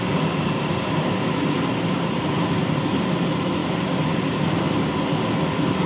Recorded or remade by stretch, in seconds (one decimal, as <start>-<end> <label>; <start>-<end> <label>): 0.0-5.9 recorded